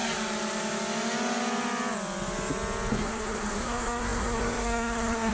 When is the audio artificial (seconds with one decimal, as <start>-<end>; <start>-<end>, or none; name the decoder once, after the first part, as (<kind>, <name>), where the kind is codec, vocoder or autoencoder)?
2.9-5.3 (codec, SNAC)